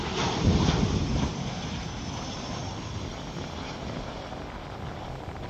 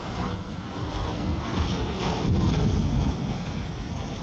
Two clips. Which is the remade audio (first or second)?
second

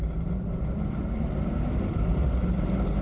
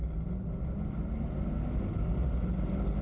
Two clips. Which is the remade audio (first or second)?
first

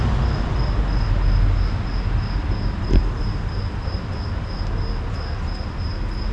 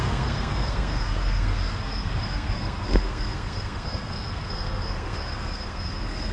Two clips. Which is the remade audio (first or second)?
second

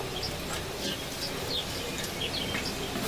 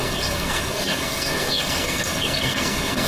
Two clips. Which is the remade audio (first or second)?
second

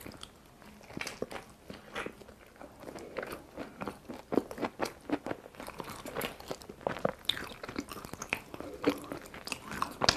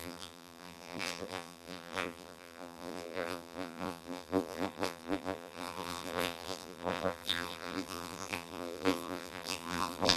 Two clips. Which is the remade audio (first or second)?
second